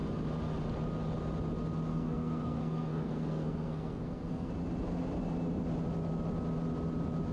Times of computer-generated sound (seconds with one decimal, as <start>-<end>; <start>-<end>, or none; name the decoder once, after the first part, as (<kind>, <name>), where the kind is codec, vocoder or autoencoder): 1.9-4.5 (codec, SNAC)